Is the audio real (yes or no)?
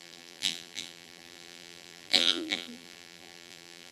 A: no